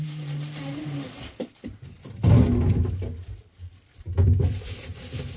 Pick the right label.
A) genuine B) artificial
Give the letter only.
A